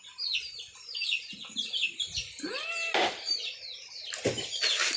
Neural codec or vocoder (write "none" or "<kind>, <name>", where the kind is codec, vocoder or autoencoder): none